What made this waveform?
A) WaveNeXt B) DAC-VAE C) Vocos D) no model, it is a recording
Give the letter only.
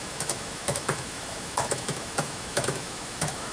B